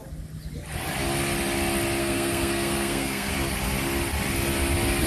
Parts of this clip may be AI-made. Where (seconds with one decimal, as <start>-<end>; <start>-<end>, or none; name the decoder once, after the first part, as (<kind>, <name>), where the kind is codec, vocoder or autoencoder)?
2.0-3.3 (codec, SNAC)